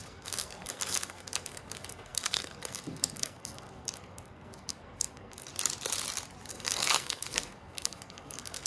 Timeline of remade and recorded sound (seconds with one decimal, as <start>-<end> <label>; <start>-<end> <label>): 0.0-5.5 remade; 5.5-6.5 recorded; 6.5-8.7 remade